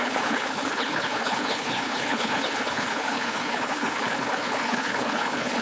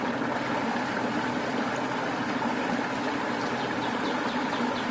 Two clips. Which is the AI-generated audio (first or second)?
first